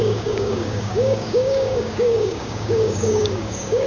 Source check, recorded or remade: remade